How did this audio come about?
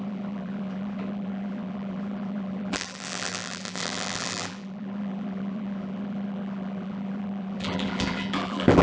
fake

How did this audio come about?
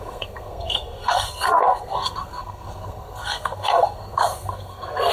fake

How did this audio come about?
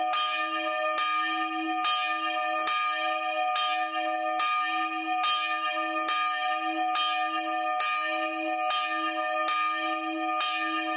real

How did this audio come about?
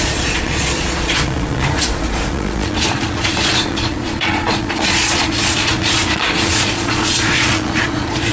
fake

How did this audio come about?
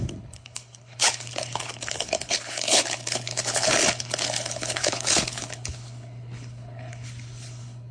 fake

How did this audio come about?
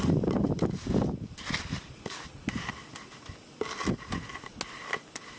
real